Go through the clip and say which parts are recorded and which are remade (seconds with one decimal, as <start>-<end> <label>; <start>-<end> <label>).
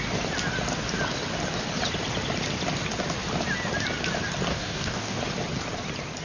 0.0-4.5 recorded; 4.5-5.2 remade; 5.2-6.2 recorded